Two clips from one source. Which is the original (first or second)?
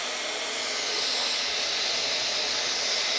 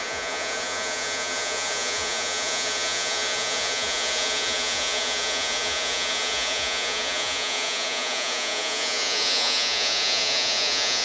first